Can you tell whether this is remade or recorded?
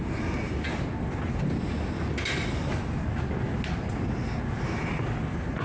recorded